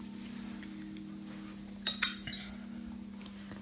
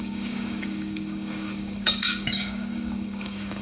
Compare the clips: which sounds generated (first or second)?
second